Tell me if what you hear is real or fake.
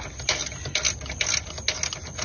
real